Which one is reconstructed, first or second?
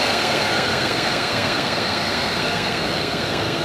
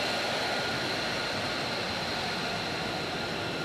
first